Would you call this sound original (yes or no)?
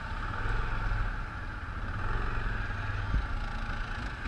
yes